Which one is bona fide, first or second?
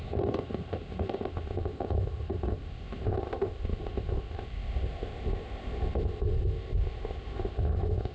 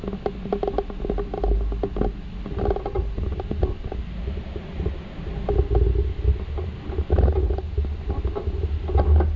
second